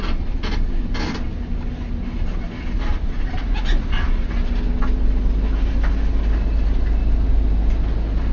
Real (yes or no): yes